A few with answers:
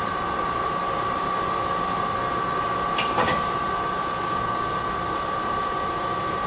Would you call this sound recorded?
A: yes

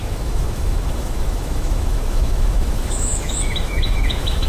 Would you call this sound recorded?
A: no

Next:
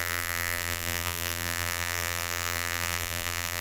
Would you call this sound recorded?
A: no